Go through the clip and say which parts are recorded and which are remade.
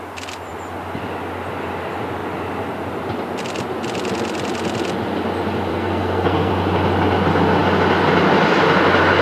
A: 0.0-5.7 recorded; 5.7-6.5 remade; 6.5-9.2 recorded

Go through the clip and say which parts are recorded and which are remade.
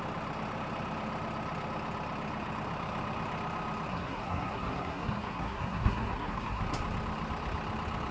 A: 0.0-3.9 recorded; 3.9-6.6 remade; 6.6-8.1 recorded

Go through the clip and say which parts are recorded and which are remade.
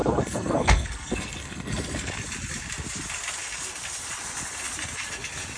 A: 0.0-2.1 remade; 2.1-5.6 recorded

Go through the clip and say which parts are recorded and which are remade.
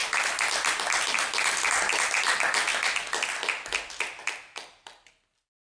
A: 0.0-5.7 recorded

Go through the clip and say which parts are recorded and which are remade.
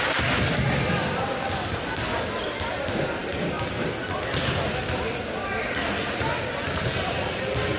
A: 0.0-7.8 recorded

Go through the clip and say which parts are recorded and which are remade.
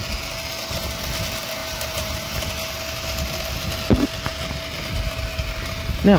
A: 0.0-1.6 recorded; 1.6-2.5 remade; 2.5-6.2 recorded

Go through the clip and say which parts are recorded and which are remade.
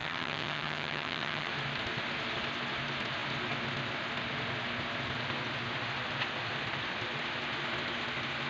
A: 0.0-1.5 remade; 1.5-8.5 recorded